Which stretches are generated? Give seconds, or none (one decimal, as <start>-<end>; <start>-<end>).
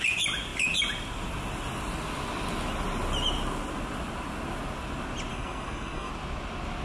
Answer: 5.3-6.1